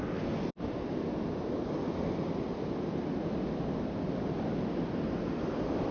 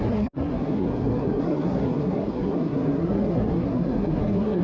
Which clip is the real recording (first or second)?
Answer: first